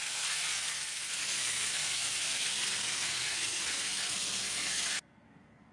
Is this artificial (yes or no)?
yes